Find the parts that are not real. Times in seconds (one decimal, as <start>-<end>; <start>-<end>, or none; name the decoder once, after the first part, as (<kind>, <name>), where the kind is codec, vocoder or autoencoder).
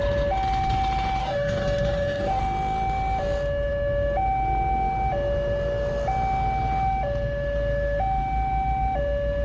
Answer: 1.2-2.4 (codec, DAC)